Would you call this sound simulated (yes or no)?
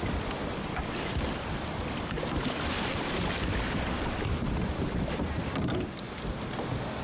yes